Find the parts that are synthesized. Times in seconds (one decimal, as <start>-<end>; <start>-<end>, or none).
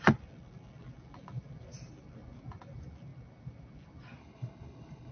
4.2-5.1